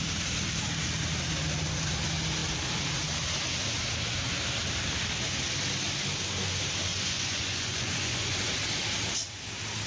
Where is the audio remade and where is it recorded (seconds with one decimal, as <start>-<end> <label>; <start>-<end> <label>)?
0.0-6.9 recorded; 6.9-8.5 remade; 8.5-9.9 recorded